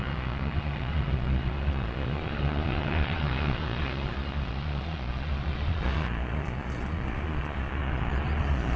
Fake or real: fake